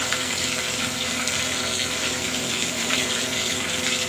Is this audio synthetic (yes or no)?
yes